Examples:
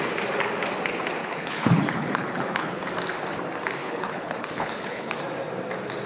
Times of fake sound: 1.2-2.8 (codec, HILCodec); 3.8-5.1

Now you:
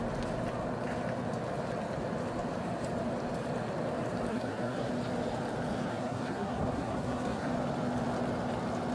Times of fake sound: 4.3-4.9 (codec, SNAC); 5.9-7.5

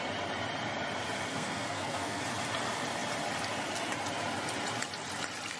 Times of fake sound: 1.3-2.2 (codec, SNAC)

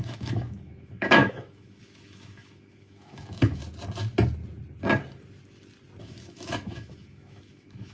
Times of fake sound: 0.0-3.6 (autoencoder, DAC-VAE); 6.0-7.9

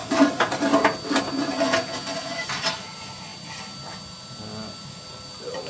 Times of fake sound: 0.0-0.6 (vocoder, BigVGAN v2)

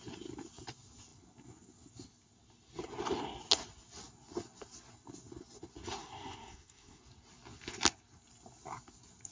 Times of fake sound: 6.0-7.0 (codec, SNAC)

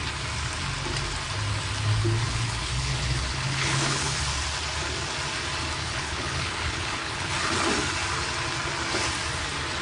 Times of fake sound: 2.0-4.2 (codec, HILCodec); 5.8-7.3

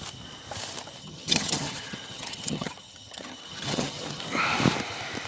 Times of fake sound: 1.0-4.2 (vocoder, HiFi-GAN)